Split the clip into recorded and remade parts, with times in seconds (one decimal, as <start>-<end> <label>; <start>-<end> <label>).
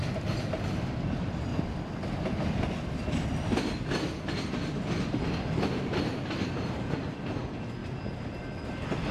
0.0-6.4 recorded; 6.4-7.0 remade; 7.0-9.1 recorded